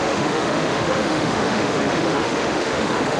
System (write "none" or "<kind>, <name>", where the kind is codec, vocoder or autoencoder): autoencoder, DAC-VAE